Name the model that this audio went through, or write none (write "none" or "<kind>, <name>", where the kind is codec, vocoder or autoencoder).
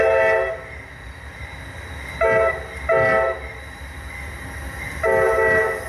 none